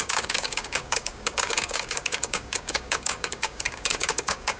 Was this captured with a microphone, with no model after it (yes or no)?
no